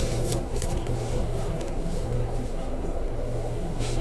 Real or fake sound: fake